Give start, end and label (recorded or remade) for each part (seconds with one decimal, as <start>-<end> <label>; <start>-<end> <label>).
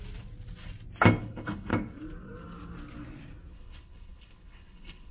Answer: 0.0-1.2 recorded; 1.2-1.7 remade; 1.7-3.5 recorded; 3.5-5.1 remade